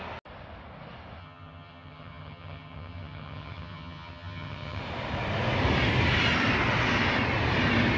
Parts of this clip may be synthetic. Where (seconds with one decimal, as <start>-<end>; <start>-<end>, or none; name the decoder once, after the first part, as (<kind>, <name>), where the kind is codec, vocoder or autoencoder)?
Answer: 1.2-4.8 (vocoder, HiFi-GAN)